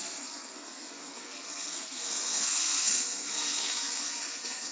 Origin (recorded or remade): remade